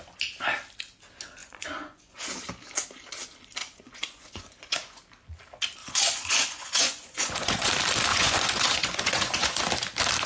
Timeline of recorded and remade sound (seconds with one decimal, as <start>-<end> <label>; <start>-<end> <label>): 0.0-1.4 recorded; 1.4-2.2 remade; 2.2-3.6 recorded; 3.6-5.0 remade; 5.0-5.8 recorded; 5.8-7.7 remade; 7.7-8.1 recorded; 8.1-9.6 remade; 9.6-10.3 recorded